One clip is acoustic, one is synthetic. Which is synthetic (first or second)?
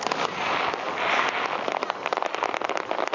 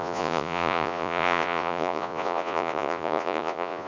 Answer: second